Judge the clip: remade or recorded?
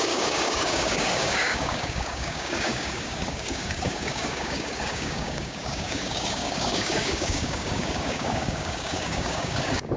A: remade